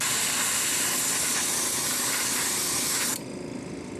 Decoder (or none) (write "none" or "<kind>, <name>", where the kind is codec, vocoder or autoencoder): none